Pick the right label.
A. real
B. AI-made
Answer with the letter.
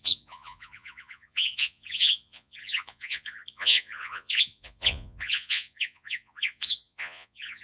B